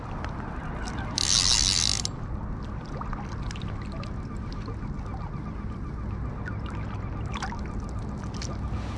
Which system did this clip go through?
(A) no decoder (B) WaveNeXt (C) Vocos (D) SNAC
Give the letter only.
A